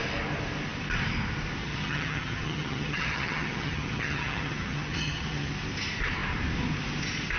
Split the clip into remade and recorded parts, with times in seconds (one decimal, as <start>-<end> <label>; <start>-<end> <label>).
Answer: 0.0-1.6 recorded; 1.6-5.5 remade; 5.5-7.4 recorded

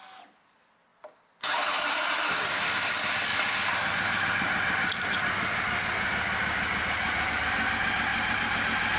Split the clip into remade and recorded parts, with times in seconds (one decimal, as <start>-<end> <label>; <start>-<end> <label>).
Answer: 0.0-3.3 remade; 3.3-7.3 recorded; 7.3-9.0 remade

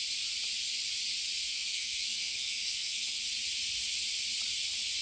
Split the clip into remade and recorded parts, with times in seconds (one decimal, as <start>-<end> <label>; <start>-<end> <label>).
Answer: 0.0-1.5 recorded; 1.5-3.2 remade; 3.2-5.0 recorded

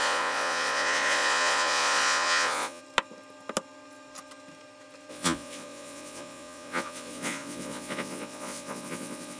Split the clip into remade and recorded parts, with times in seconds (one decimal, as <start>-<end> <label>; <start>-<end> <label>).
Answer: 0.0-2.8 remade; 2.8-5.1 recorded; 5.1-9.4 remade

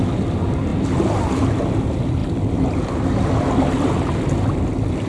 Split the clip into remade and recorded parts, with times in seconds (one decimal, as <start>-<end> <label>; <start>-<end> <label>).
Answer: 0.0-5.1 recorded

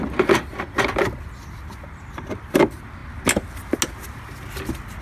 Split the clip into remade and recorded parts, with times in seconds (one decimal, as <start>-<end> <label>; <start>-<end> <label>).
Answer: 0.0-5.0 recorded

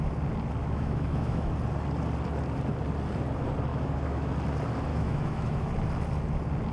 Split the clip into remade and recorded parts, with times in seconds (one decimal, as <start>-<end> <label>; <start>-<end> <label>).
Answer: 0.0-0.6 recorded; 0.6-1.5 remade; 1.5-3.7 recorded; 3.7-4.3 remade; 4.3-4.9 recorded; 4.9-5.7 remade; 5.7-6.7 recorded